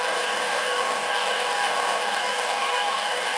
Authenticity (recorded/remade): remade